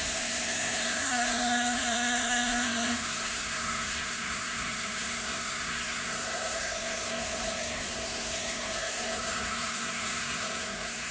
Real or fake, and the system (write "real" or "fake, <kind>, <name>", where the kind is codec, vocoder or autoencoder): fake, codec, SNAC